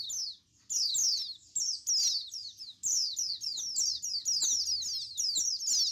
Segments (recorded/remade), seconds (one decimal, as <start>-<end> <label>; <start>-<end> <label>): 0.0-5.9 recorded